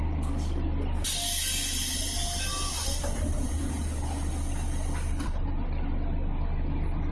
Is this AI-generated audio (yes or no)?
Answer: no